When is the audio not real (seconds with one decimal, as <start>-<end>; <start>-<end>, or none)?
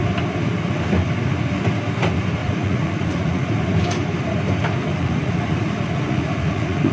2.4-3.5; 4.9-6.9